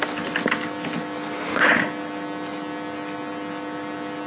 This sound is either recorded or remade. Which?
recorded